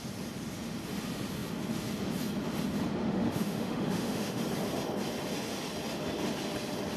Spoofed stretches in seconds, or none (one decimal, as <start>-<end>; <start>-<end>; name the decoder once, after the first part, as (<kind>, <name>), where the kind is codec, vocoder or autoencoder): 3.0-4.4 (autoencoder, DAC-VAE)